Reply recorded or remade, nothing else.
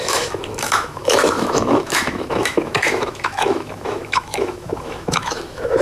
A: remade